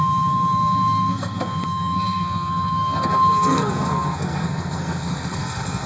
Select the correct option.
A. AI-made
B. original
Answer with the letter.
A